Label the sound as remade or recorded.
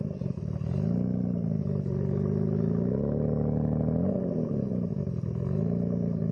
recorded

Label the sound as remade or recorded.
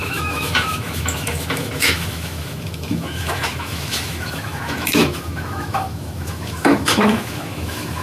remade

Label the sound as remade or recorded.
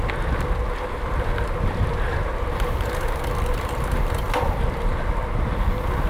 recorded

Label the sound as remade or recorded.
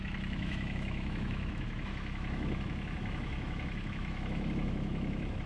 remade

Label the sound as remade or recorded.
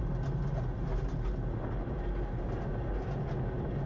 recorded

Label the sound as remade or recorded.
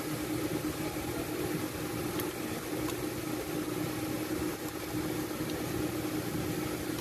recorded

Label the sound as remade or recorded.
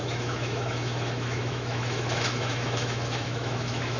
remade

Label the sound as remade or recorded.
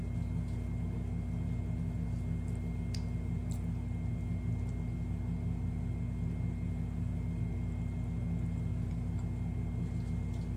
recorded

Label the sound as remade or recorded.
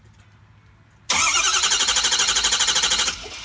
recorded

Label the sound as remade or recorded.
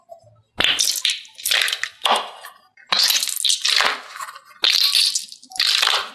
recorded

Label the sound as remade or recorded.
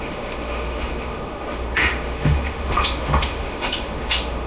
remade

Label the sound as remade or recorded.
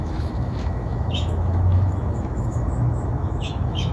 remade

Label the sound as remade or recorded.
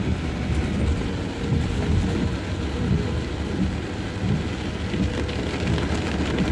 recorded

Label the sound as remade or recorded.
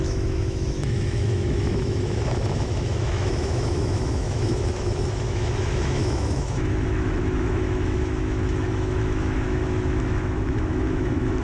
remade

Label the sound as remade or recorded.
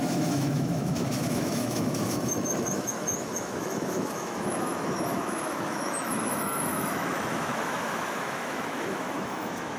remade